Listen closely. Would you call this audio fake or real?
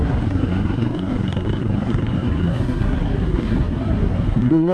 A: fake